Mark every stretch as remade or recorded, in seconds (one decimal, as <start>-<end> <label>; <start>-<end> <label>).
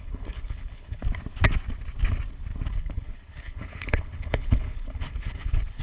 0.0-1.0 remade; 1.0-2.7 recorded; 2.7-5.8 remade